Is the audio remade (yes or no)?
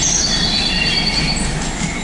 no